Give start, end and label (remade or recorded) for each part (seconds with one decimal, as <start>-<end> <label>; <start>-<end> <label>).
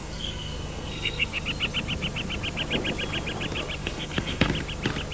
0.0-1.4 remade; 1.4-3.8 recorded; 3.8-4.5 remade; 4.5-5.1 recorded